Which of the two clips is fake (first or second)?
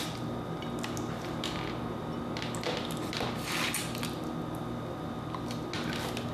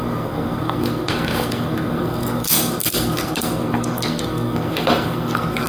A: second